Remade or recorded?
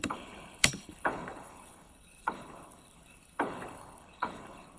remade